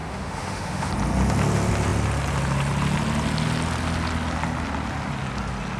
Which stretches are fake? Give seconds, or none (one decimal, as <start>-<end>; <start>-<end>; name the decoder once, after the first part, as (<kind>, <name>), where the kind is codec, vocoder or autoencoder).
0.0-0.9 (autoencoder, DAC-VAE)

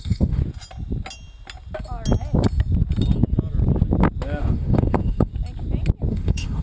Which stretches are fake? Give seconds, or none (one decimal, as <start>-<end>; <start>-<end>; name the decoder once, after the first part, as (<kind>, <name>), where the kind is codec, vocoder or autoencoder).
0.0-0.4 (autoencoder, DAC-VAE); 4.4-5.3; 6.1-6.6

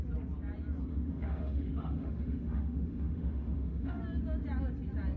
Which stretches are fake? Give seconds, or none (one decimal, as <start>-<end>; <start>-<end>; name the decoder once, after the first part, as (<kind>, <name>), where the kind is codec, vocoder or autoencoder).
0.9-4.0 (autoencoder, DAC-VAE)